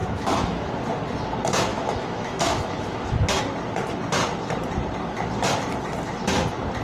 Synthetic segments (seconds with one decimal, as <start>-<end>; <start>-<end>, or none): 0.0-0.7; 1.7-3.4